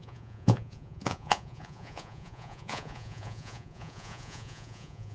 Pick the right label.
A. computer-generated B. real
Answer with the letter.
A